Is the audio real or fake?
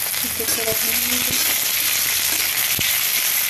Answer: real